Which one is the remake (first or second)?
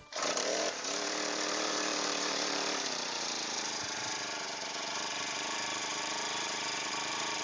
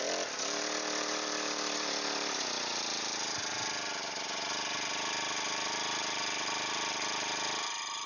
first